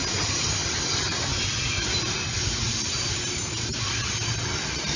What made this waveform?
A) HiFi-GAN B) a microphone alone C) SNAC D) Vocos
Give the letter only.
B